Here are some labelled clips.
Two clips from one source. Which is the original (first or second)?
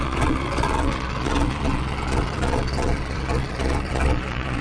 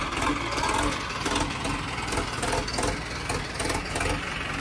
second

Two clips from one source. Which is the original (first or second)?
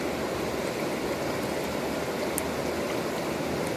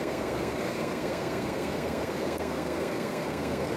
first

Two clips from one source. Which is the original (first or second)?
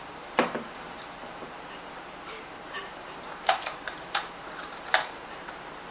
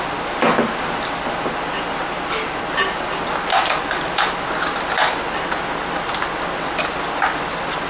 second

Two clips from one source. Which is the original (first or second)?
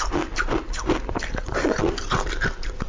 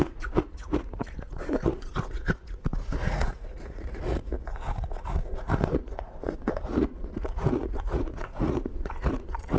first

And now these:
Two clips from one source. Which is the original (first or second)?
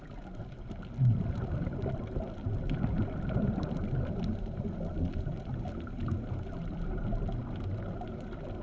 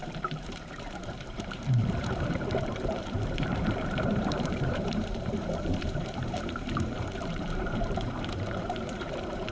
first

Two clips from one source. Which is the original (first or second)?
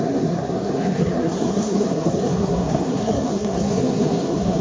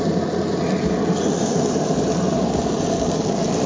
second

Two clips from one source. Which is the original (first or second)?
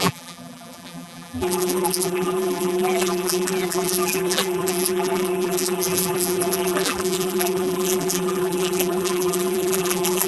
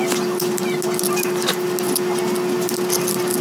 second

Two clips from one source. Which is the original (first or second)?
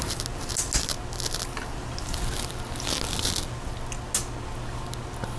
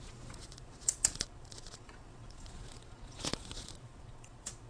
first